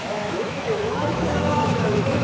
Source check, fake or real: fake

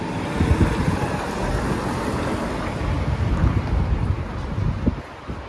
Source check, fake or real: real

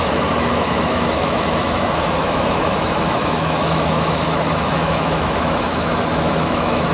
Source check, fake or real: fake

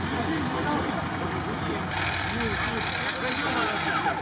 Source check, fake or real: real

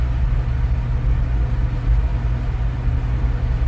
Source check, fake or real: real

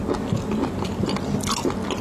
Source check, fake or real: real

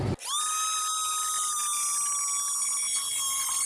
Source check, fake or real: real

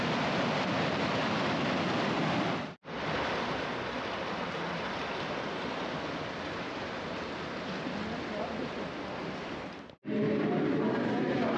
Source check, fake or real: real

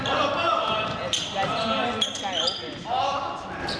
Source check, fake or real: real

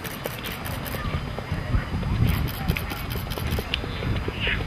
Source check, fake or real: real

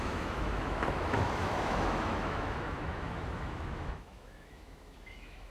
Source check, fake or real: fake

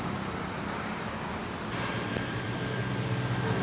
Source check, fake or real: real